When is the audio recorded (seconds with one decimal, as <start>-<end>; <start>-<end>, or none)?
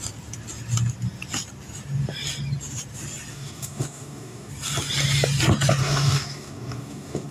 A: 0.0-3.3; 4.5-5.8